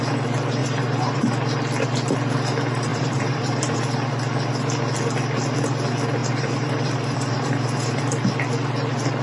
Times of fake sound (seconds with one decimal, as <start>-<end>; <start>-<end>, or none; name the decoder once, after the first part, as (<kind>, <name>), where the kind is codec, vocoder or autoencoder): 0.6-1.2 (vocoder, BigVGAN v2); 2.9-3.8; 6.2-8.0